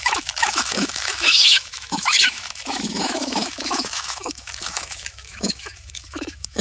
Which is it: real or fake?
fake